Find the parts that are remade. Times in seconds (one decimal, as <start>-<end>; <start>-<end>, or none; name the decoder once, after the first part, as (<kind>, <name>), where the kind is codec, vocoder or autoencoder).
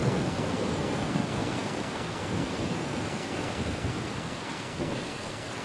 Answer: 0.0-5.6 (codec, SNAC)